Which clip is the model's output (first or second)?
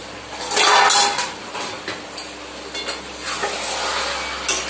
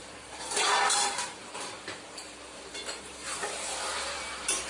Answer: second